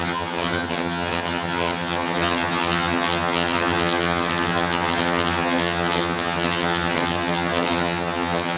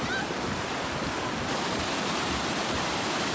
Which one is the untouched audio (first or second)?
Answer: second